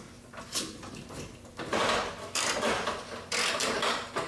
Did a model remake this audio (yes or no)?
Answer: no